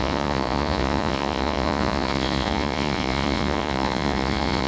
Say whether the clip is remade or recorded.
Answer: remade